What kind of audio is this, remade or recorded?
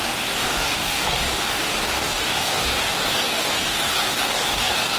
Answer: remade